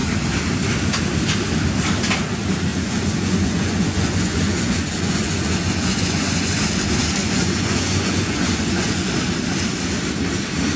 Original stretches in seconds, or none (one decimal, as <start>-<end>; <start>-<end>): 0.0-2.7; 6.6-7.2; 9.1-10.8